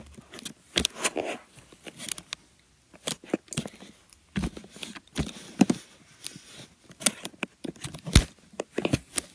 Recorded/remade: recorded